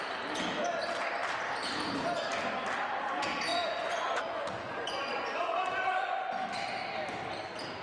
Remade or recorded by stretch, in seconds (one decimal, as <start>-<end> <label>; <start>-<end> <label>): 0.0-3.5 recorded; 3.5-6.2 remade; 6.2-7.8 recorded